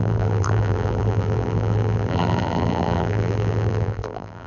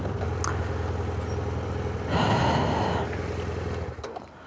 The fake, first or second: first